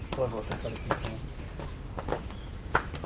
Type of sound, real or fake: real